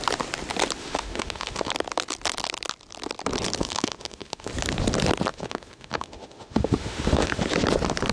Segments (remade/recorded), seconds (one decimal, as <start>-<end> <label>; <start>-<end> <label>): 0.0-0.8 recorded; 0.8-1.7 remade; 1.7-3.6 recorded; 3.6-4.5 remade; 4.5-5.3 recorded; 5.3-7.4 remade; 7.4-8.1 recorded